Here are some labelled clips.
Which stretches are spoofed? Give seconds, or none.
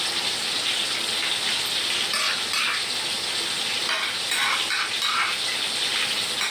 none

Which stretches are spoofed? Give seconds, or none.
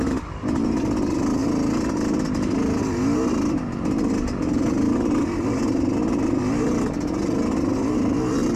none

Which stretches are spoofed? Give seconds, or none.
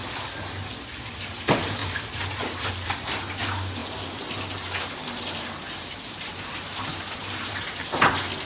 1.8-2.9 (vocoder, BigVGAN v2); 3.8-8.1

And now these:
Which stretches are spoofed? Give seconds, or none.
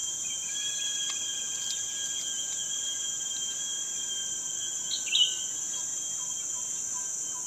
0.0-2.5 (vocoder, BigVGAN v2)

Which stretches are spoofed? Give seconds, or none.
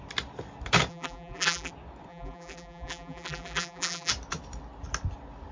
0.9-1.7 (vocoder, BigVGAN v2); 2.1-4.1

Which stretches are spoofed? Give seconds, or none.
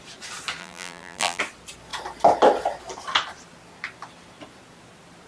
0.6-1.4 (vocoder, BigVGAN v2)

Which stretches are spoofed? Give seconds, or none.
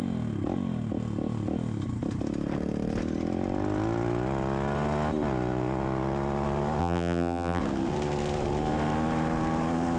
6.8-7.6 (vocoder, BigVGAN v2)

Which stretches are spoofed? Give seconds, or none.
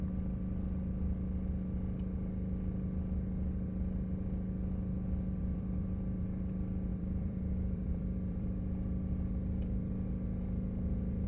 5.4-6.2 (vocoder, BigVGAN v2); 6.9-8.6